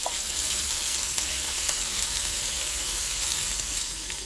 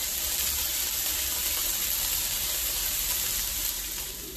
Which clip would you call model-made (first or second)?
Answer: first